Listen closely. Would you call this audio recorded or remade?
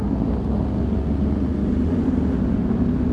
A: recorded